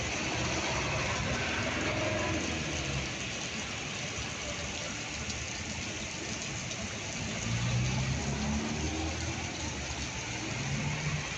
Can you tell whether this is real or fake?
real